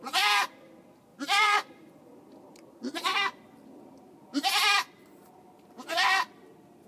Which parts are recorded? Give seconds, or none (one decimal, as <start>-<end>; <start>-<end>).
0.0-1.1; 1.9-6.9